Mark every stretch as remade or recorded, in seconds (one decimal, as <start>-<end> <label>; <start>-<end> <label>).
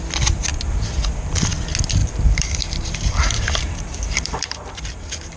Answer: 0.0-2.0 recorded; 2.0-5.4 remade